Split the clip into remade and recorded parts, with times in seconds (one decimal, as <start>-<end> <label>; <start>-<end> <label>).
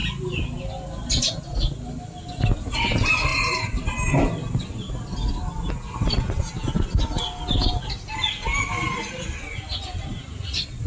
0.0-10.9 recorded